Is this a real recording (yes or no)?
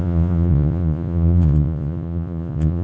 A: no